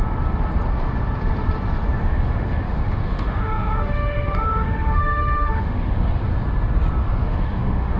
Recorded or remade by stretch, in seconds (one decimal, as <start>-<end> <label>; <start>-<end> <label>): 0.0-2.0 recorded; 2.0-6.2 remade; 6.2-7.0 recorded; 7.0-8.0 remade

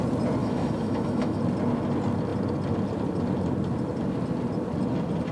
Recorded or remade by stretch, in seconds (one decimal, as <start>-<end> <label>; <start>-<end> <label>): 0.0-0.4 recorded; 0.4-1.4 remade; 1.4-5.3 recorded